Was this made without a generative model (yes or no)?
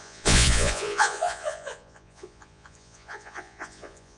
no